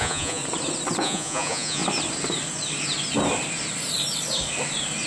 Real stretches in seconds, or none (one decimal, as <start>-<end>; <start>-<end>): 0.4-1.0; 1.8-5.1